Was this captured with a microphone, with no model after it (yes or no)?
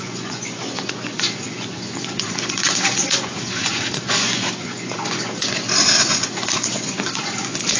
no